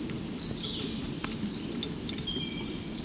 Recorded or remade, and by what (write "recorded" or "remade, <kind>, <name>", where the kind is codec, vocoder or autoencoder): recorded